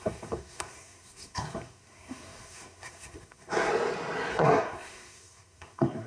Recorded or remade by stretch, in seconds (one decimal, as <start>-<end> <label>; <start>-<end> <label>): 0.0-3.7 remade; 3.7-4.3 recorded; 4.3-6.1 remade